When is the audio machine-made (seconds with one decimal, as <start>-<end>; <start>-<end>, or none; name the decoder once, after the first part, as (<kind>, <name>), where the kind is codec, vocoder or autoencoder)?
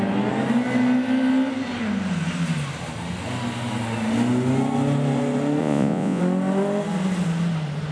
5.6-6.2 (vocoder, Vocos)